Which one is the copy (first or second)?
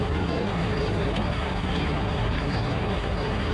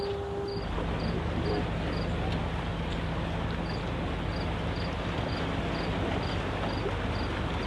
first